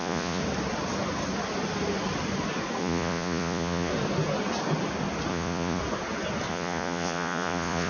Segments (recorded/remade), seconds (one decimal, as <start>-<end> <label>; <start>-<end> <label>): 0.0-0.4 remade; 0.4-2.8 recorded; 2.8-3.9 remade; 3.9-5.3 recorded; 5.3-5.8 remade; 5.8-6.5 recorded; 6.5-7.9 remade